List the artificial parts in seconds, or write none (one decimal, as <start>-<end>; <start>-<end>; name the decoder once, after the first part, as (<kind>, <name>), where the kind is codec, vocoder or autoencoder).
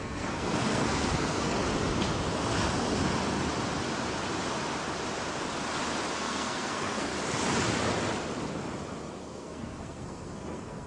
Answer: 0.0-1.6 (codec, SNAC); 6.1-7.1; 9.1-10.9